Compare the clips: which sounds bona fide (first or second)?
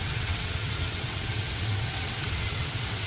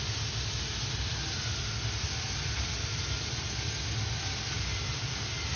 second